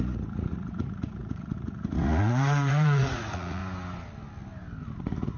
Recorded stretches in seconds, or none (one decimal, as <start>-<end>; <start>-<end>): 3.6-5.0